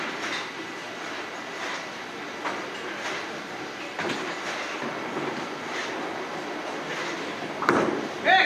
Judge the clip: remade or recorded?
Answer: recorded